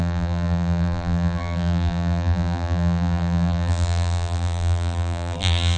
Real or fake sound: fake